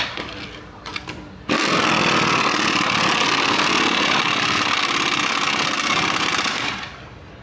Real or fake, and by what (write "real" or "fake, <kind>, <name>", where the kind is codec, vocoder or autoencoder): real